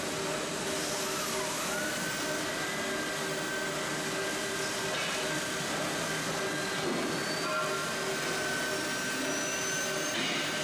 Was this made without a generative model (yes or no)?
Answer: yes